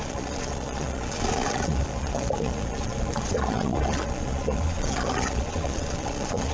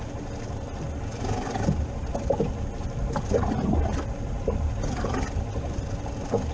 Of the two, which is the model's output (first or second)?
first